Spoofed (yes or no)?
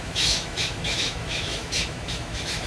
yes